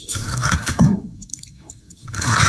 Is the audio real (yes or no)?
no